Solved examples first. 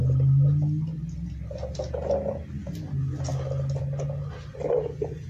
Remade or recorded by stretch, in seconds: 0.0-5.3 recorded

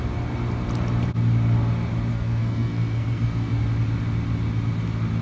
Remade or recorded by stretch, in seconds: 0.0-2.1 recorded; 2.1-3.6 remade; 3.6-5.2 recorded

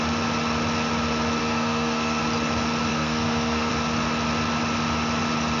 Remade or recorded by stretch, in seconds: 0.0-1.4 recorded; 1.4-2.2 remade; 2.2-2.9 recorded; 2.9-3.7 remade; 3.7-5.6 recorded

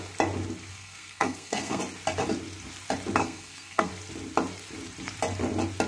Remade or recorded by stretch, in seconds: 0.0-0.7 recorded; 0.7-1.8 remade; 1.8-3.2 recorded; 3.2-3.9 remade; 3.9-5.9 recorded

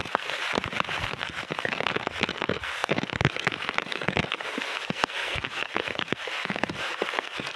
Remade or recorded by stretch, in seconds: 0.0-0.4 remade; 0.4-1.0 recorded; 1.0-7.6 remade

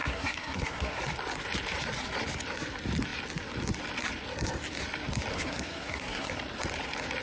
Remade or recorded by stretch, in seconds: 0.0-1.0 remade; 1.0-5.3 recorded; 5.3-6.3 remade; 6.3-7.2 recorded

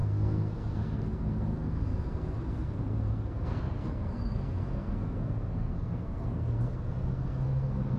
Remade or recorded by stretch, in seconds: 0.0-8.0 remade